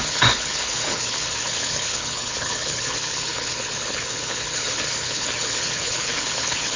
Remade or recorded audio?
remade